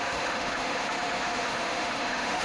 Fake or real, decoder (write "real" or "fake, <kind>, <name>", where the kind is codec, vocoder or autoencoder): fake, autoencoder, DAC-VAE